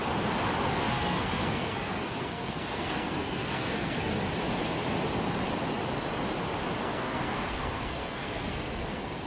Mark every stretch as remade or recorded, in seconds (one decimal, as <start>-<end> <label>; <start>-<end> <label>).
0.0-0.7 recorded; 0.7-4.1 remade; 4.1-6.8 recorded; 6.8-9.3 remade